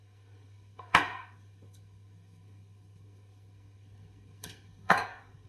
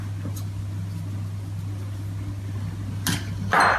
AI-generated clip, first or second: first